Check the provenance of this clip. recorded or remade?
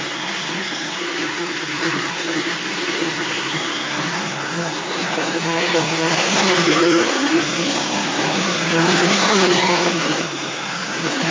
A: remade